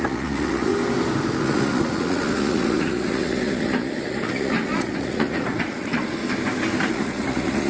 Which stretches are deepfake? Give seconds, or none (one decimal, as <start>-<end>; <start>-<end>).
0.0-0.7; 1.4-6.2; 6.9-7.7